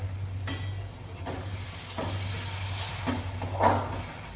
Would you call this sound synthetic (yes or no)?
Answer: no